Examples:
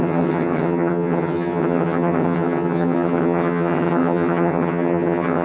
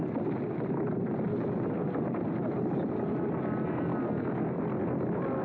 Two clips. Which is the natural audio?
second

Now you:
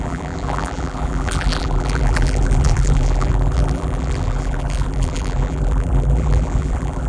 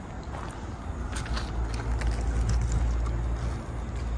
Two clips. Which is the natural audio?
second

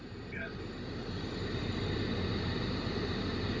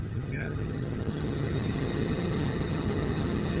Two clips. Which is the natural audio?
first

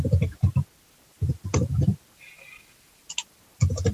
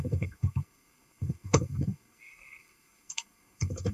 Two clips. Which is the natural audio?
first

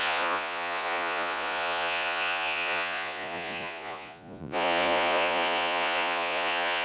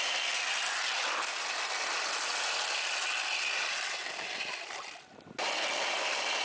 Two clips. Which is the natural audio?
second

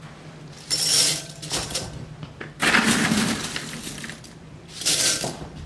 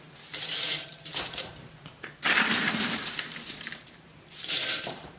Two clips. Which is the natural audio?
first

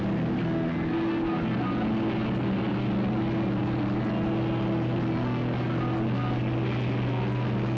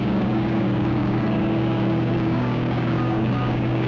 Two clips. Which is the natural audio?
first